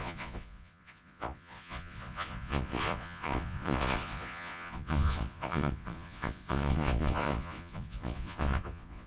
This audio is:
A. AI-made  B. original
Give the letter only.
A